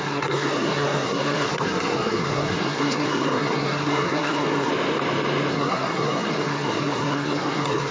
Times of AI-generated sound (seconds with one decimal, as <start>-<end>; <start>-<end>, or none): 0.0-4.7; 5.5-7.9